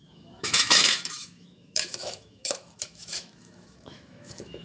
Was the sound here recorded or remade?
remade